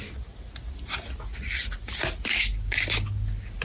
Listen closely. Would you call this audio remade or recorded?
recorded